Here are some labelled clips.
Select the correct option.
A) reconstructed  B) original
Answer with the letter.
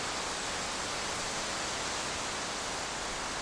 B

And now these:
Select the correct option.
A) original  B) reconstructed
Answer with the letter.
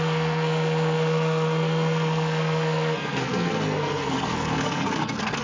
B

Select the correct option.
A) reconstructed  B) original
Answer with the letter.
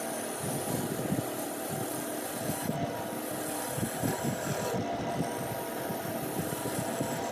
B